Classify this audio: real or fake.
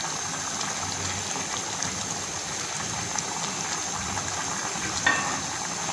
real